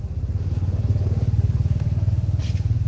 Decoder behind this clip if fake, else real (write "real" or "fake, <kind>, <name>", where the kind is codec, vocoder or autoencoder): real